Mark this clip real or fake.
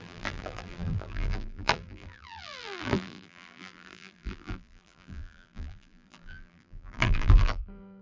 fake